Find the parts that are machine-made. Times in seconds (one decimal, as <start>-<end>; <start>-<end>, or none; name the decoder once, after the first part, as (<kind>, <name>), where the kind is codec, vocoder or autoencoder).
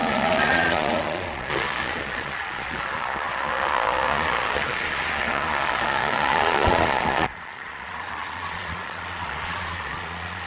0.0-10.5 (vocoder, Vocos)